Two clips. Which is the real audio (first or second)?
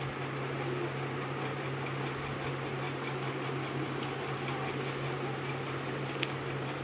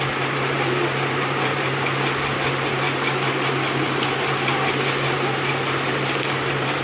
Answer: first